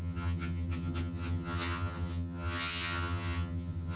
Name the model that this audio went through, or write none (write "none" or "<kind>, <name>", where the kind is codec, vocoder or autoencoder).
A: vocoder, HiFi-GAN